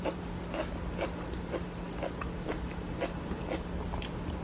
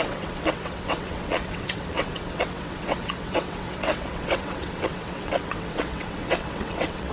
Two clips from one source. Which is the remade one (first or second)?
second